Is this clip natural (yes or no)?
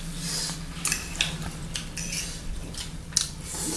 yes